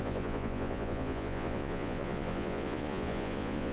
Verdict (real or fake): fake